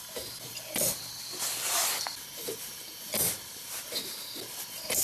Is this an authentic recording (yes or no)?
yes